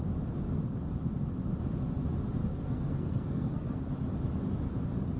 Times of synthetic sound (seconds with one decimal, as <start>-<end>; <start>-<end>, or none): 2.5-3.9